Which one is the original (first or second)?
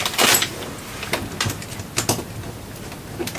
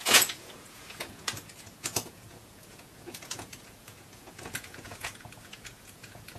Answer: first